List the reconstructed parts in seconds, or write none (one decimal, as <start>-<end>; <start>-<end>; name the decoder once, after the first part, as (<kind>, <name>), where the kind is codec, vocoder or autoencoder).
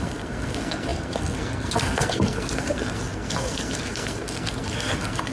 0.0-5.3 (codec, SNAC)